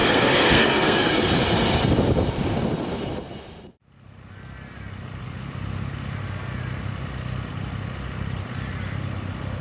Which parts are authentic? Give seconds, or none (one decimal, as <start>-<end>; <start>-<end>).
1.1-9.6